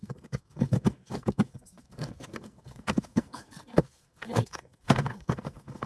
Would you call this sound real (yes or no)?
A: no